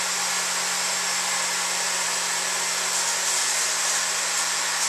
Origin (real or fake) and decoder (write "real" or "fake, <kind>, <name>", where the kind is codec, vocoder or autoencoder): real